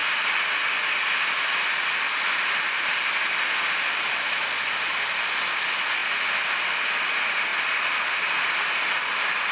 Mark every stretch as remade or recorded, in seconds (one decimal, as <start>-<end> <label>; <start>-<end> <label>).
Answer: 0.0-9.5 recorded